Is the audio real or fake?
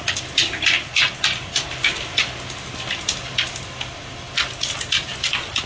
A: real